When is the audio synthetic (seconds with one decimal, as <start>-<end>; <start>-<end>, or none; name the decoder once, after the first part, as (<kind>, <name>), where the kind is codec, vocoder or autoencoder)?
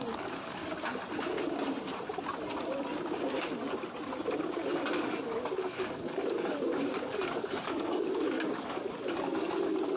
0.0-0.6 (codec, DAC); 5.0-10.0